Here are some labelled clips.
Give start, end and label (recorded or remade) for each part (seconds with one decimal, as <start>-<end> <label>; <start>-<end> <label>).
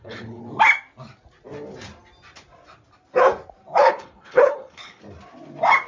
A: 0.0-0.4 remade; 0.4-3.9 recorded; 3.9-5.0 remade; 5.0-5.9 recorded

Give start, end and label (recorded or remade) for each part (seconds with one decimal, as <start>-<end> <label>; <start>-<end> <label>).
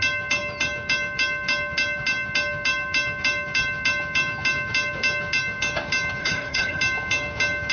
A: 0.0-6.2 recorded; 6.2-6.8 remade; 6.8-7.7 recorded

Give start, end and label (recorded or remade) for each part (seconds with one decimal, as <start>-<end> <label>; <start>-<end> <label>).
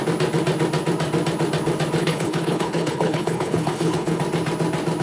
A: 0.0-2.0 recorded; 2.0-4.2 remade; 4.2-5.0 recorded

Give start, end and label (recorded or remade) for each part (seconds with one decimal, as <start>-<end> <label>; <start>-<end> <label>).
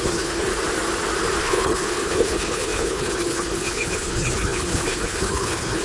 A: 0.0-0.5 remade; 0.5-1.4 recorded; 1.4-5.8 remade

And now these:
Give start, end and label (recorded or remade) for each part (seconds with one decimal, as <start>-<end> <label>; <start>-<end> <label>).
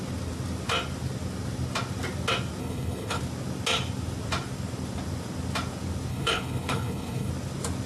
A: 0.0-2.6 recorded; 2.6-3.2 remade; 3.2-6.1 recorded; 6.1-7.3 remade; 7.3-7.9 recorded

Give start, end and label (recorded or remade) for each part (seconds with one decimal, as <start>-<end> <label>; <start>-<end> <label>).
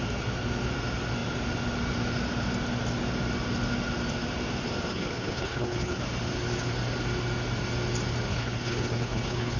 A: 0.0-4.9 recorded; 4.9-6.0 remade; 6.0-8.3 recorded; 8.3-9.6 remade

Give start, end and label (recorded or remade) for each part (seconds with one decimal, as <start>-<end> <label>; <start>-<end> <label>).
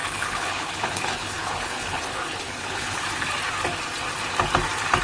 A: 0.0-3.0 remade; 3.0-5.0 recorded